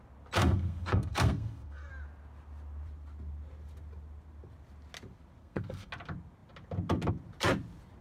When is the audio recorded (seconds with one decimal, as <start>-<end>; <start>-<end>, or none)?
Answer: 0.0-0.4; 1.9-5.4; 5.9-8.0